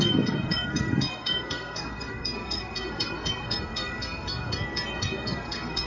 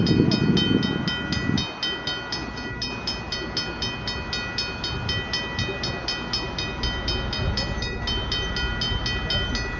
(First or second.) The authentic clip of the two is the second